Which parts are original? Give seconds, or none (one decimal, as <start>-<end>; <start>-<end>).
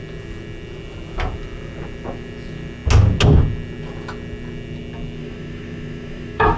0.0-5.2